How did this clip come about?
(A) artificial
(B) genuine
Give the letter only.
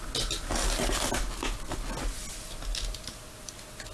B